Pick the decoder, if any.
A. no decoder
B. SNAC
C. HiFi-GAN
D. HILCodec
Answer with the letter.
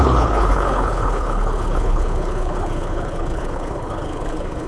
D